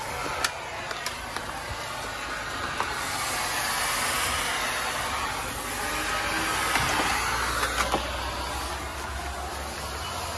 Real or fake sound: real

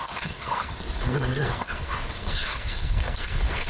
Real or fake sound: fake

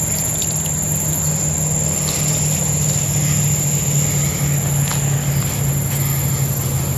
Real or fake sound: real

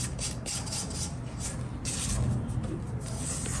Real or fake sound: real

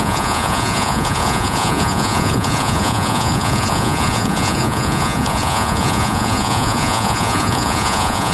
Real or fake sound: fake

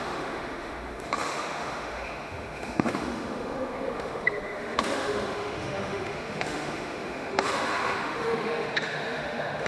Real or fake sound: fake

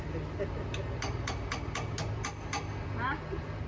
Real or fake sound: real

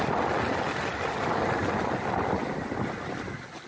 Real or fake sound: real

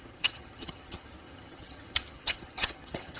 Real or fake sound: fake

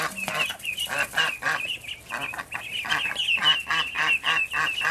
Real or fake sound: real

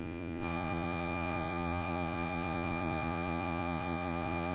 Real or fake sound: fake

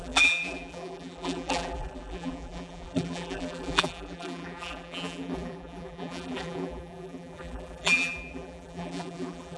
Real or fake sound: fake